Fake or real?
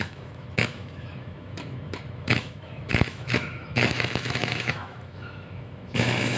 fake